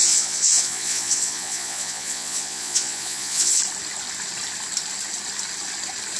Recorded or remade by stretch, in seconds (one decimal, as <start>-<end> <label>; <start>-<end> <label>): 0.0-3.6 remade; 3.6-6.2 recorded